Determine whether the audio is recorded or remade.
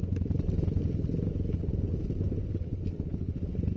recorded